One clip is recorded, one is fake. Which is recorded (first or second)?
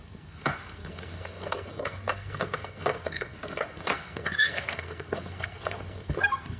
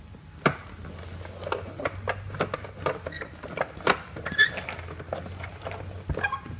second